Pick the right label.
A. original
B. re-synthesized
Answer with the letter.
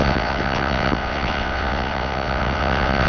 B